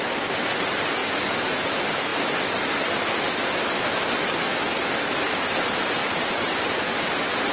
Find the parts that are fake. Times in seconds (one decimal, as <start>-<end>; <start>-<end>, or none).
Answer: 0.0-1.0; 1.5-2.1; 5.5-7.5